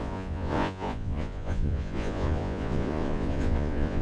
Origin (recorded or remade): remade